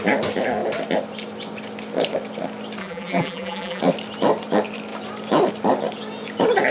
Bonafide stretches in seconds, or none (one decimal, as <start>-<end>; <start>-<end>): 0.0-2.8; 3.8-6.7